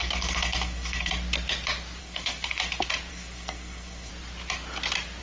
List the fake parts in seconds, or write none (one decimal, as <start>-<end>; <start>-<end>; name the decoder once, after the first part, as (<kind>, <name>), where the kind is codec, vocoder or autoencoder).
0.0-1.1 (codec, SNAC); 2.0-2.6; 3.1-4.1